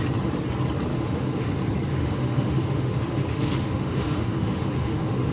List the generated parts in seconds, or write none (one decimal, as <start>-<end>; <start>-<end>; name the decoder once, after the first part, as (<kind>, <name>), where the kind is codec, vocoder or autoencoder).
0.9-1.5 (autoencoder, DAC-VAE); 1.9-5.3